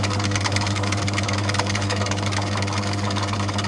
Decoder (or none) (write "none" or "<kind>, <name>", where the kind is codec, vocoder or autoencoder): codec, DAC